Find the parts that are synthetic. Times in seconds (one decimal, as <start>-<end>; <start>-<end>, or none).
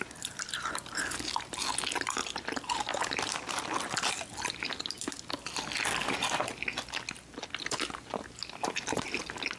none